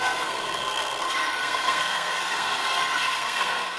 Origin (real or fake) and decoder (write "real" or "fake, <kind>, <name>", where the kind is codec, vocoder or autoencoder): fake, codec, SNAC